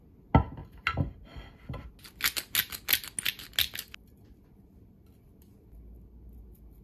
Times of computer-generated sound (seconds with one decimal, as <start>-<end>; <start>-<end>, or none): none